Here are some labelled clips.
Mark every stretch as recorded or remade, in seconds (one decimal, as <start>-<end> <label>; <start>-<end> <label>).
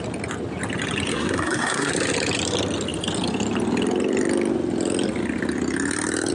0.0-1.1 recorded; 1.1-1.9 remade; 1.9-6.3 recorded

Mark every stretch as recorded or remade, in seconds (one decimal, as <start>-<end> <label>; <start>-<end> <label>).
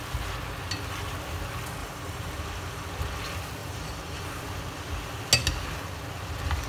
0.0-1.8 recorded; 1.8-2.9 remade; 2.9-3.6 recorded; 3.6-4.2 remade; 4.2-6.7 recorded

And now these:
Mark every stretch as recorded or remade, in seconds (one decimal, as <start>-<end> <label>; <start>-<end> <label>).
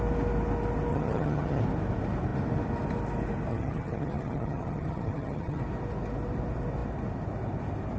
0.0-0.9 recorded; 0.9-1.6 remade; 1.6-3.5 recorded; 3.5-5.6 remade; 5.6-8.0 recorded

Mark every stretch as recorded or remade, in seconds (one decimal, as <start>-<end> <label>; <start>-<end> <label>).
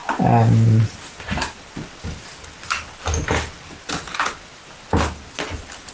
0.0-5.9 recorded